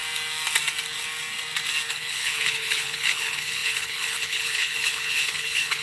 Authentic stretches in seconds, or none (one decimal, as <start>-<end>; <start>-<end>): 0.0-1.9